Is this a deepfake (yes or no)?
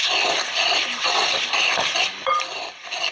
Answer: yes